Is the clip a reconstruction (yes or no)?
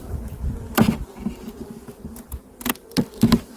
no